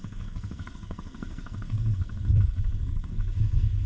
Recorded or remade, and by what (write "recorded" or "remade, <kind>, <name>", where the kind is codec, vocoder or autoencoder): remade, codec, SNAC